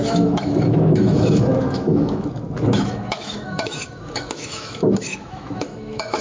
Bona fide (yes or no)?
no